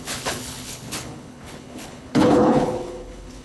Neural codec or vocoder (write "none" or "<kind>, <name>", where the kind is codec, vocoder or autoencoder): codec, HILCodec